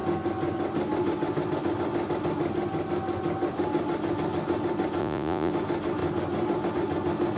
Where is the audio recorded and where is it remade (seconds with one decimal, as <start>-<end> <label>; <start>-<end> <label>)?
0.0-5.0 recorded; 5.0-5.5 remade; 5.5-7.4 recorded